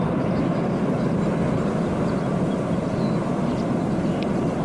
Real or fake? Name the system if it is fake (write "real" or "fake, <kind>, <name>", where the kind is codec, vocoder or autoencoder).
real